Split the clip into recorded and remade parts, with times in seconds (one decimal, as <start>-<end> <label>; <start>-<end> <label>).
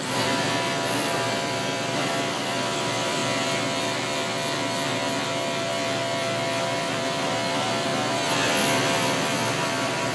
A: 0.0-3.2 remade; 3.2-6.6 recorded; 6.6-10.1 remade